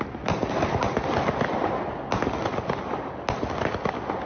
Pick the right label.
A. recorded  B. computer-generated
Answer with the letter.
A